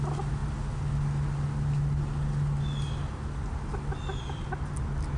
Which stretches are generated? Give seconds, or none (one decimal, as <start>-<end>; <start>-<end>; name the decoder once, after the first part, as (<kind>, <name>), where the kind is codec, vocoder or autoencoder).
none